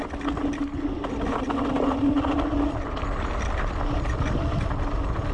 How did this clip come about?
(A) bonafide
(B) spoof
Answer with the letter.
A